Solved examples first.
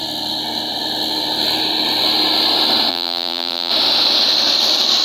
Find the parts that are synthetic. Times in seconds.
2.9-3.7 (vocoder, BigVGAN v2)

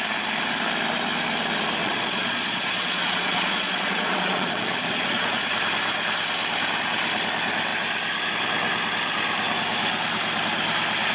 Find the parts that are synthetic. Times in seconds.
1.8-5.5 (vocoder, Vocos)

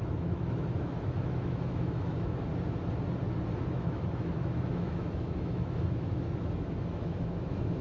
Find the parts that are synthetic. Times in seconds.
0.0-2.5 (autoencoder, DAC-VAE); 3.7-7.8

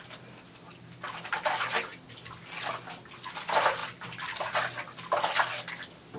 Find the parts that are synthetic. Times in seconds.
none

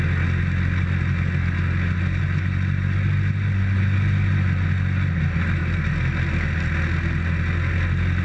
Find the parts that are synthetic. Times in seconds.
none